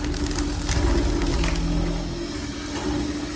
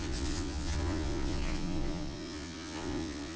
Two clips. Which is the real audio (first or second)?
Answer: first